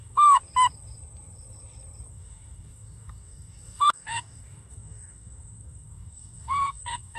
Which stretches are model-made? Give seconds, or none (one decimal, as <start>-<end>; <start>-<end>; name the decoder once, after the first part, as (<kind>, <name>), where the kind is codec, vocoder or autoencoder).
0.0-0.4 (codec, DAC); 2.1-7.2